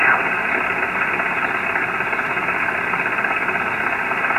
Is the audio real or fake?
real